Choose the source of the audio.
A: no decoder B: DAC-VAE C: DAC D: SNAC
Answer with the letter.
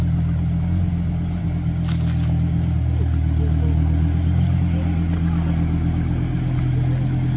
A